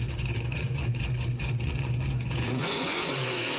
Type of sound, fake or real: fake